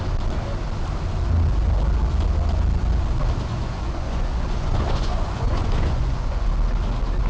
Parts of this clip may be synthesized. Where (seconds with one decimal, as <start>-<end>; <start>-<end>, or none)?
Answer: 3.5-6.5